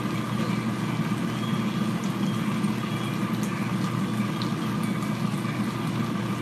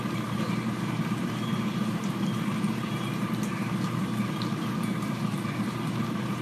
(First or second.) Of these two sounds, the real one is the first